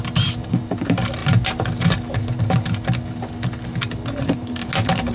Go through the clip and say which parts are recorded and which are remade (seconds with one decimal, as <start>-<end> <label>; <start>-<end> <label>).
0.0-5.1 recorded